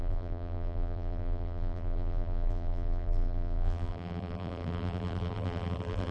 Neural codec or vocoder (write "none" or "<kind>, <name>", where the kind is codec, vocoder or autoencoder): vocoder, BigVGAN v2